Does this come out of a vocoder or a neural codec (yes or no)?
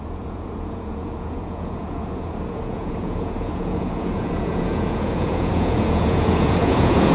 yes